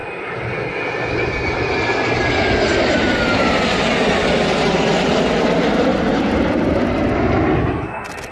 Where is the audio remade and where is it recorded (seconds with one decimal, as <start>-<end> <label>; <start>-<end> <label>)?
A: 0.0-5.9 recorded; 5.9-7.7 remade; 7.7-8.3 recorded